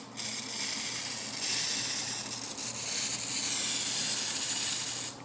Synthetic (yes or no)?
no